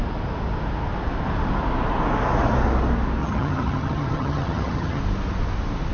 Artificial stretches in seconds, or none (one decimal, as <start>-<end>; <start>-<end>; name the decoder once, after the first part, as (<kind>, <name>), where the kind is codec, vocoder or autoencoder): 3.2-5.0 (vocoder, HiFi-GAN)